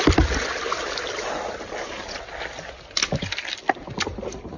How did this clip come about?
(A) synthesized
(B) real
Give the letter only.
B